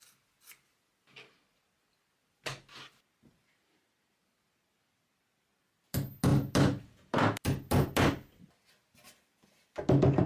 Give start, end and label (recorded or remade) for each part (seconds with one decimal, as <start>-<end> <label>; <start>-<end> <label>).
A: 0.0-10.3 recorded